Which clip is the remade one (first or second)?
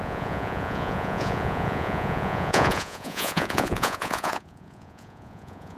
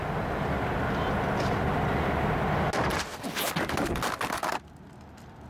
first